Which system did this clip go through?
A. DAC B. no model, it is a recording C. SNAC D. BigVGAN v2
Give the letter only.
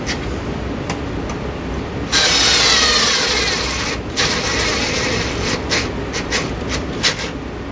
B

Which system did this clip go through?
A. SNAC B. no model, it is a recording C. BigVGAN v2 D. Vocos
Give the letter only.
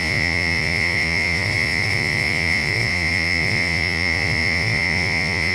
D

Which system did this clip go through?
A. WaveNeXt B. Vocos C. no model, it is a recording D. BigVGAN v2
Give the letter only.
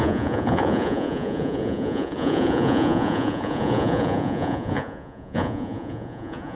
B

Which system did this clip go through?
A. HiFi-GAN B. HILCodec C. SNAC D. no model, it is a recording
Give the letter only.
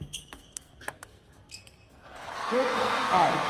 C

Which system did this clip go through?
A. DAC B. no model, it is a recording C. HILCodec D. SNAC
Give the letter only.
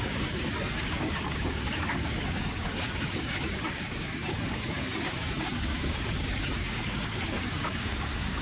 A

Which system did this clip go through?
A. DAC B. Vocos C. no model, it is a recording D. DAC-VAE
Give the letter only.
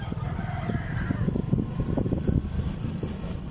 C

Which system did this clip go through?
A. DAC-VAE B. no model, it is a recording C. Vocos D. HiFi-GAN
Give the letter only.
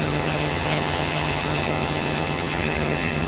D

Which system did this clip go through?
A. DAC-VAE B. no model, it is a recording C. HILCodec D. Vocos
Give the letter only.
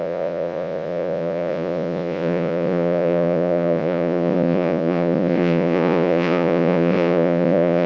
D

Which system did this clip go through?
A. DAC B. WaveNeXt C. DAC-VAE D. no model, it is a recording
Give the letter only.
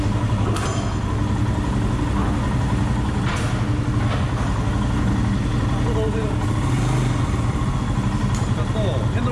D